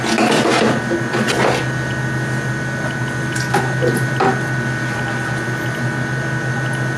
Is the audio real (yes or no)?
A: yes